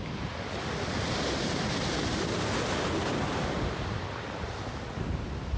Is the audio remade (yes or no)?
no